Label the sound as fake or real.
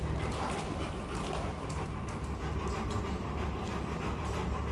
real